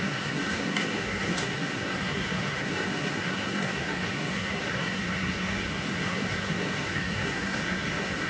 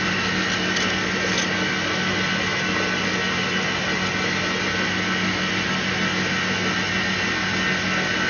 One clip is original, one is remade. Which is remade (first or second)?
first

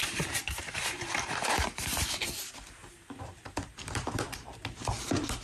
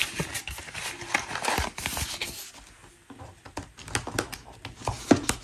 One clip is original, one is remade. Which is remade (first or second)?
first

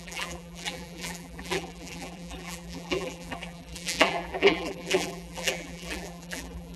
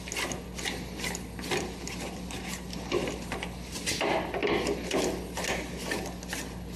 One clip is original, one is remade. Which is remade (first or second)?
first